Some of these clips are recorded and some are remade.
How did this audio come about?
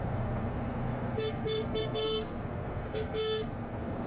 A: remade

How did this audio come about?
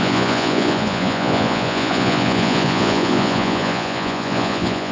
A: remade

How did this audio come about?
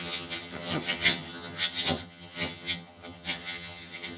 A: remade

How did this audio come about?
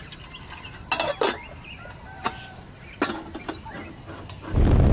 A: recorded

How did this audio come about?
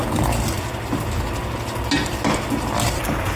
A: recorded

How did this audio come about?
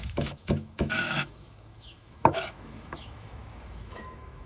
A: remade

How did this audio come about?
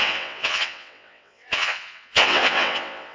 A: remade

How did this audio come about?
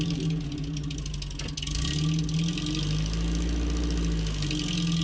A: recorded